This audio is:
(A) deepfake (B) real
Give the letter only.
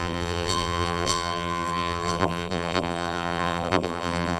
A